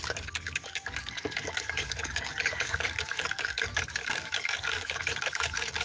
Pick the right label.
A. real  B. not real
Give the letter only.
B